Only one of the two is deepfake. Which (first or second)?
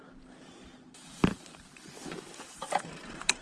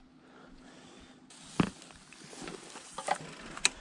first